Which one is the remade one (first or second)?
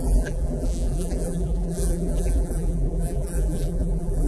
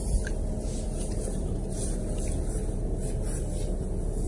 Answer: first